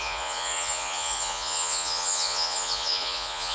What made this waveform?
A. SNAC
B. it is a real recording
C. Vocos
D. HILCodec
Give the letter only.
C